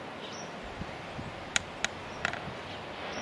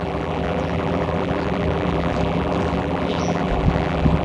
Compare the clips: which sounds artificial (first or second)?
second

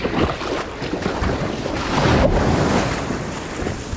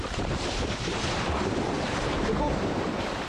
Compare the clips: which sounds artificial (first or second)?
second